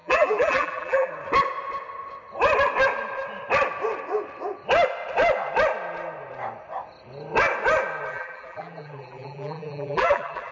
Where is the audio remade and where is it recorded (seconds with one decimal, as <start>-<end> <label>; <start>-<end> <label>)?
0.0-1.1 remade; 1.1-8.1 recorded; 8.1-10.5 remade